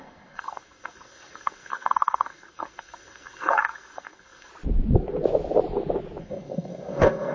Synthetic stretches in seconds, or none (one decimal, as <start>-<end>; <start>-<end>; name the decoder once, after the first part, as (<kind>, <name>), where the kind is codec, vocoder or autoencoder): 0.0-4.5 (codec, SNAC); 6.2-7.3